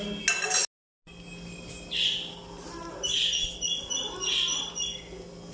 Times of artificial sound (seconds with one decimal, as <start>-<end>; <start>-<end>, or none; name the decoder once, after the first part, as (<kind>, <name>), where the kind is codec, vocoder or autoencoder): none